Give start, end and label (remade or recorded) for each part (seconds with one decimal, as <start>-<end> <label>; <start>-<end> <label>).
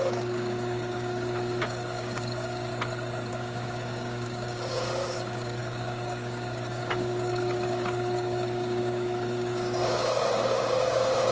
0.0-2.7 remade; 2.7-3.3 recorded; 3.3-11.3 remade